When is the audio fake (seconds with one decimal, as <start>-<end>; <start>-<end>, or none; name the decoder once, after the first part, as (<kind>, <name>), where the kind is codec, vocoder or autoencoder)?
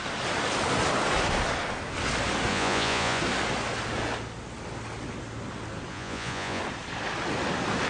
2.5-3.2 (vocoder, Vocos); 5.9-6.6